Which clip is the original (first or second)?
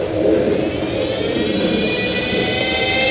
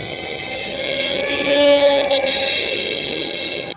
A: first